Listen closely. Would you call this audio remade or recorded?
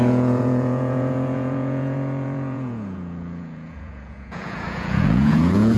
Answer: remade